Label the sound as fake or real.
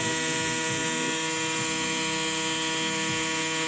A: real